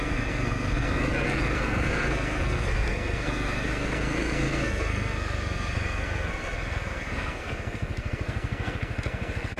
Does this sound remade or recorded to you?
remade